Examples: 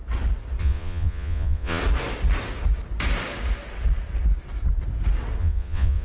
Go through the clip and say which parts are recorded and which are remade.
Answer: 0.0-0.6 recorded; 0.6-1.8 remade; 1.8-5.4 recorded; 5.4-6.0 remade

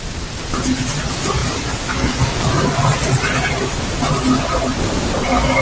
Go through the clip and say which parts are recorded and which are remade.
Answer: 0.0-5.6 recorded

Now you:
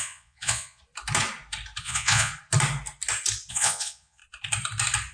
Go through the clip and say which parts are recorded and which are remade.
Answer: 0.0-0.8 remade; 0.8-1.8 recorded; 1.8-2.3 remade; 2.3-3.5 recorded; 3.5-4.2 remade; 4.2-5.1 recorded

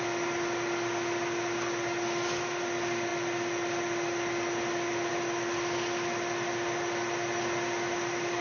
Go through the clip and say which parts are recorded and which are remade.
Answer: 0.0-8.4 recorded